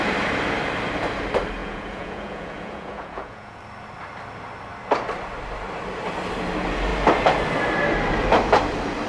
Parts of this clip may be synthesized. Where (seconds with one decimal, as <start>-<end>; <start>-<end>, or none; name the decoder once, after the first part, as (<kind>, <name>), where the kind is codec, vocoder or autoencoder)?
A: 1.6-3.6 (vocoder, Vocos)